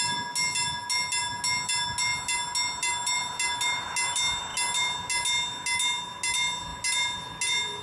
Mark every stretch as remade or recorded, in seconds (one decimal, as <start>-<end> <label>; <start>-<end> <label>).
0.0-7.8 recorded